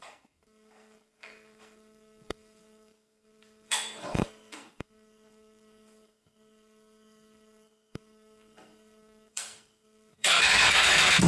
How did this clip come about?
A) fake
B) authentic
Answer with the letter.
A